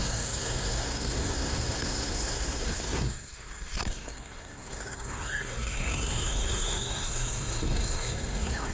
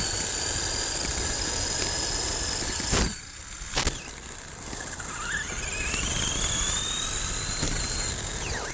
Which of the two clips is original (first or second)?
second